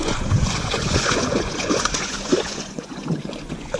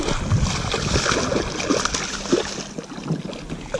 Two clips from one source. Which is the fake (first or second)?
first